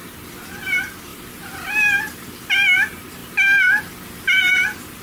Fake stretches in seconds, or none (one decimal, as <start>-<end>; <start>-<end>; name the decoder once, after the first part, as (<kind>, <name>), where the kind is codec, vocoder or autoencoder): 0.0-3.2 (vocoder, BigVGAN v2); 4.5-5.0